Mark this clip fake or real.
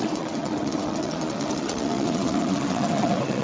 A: fake